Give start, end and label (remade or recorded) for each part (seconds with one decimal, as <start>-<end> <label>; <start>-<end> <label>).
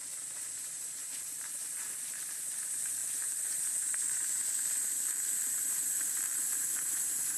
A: 0.0-6.3 remade; 6.3-7.4 recorded